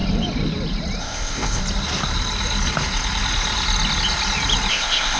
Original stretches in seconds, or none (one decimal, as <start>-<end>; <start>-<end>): 0.0-1.0; 1.6-4.7